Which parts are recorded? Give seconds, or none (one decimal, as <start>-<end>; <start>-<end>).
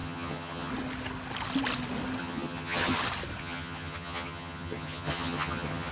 0.7-2.2; 3.0-3.4